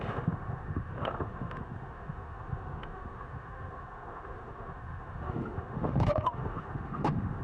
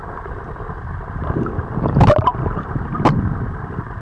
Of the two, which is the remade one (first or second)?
first